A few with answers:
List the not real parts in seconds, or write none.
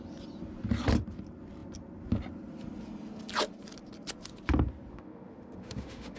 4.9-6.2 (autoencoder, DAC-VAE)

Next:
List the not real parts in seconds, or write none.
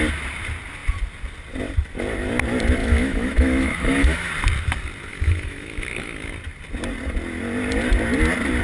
2.8-4.3 (autoencoder, DAC-VAE); 5.1-6.3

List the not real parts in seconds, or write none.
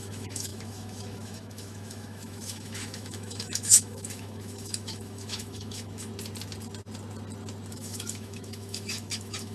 0.0-6.1 (autoencoder, DAC-VAE); 7.7-9.5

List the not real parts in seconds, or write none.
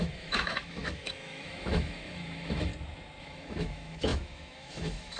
0.0-2.7 (autoencoder, DAC-VAE); 3.2-5.2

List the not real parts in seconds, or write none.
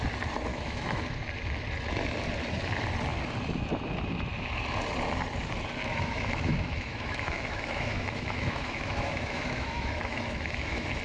0.5-1.0 (autoencoder, DAC-VAE); 5.8-11.0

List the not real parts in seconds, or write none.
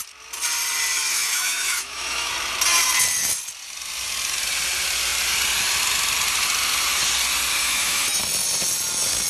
1.1-2.3 (autoencoder, DAC-VAE); 7.6-8.2